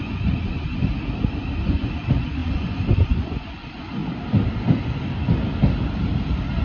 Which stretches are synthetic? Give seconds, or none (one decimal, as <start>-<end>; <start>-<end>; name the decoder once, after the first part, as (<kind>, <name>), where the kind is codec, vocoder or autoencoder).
0.0-0.8 (vocoder, Vocos); 1.6-4.0